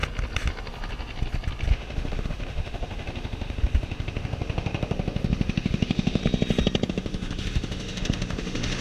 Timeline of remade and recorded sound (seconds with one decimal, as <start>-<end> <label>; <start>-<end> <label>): 0.0-1.7 recorded; 1.7-6.2 remade; 6.2-6.9 recorded; 6.9-8.8 remade